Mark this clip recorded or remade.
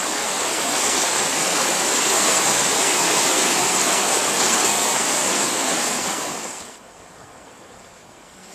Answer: remade